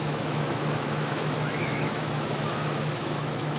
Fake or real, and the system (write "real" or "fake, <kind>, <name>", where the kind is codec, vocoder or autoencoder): fake, autoencoder, DAC-VAE